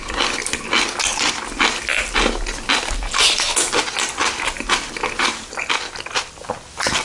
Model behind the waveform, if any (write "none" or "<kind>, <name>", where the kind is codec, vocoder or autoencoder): none